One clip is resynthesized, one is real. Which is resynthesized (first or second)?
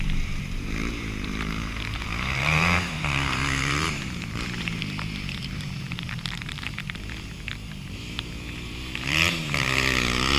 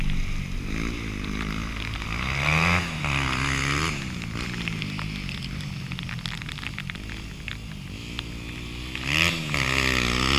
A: first